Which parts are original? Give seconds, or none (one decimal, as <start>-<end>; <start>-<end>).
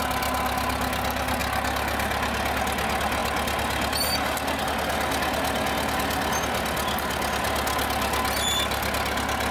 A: 0.0-9.5